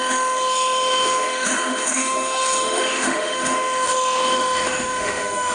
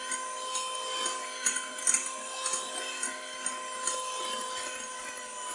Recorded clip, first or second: second